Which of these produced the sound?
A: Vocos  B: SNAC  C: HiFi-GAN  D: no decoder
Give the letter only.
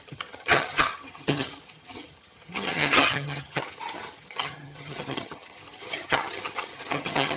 C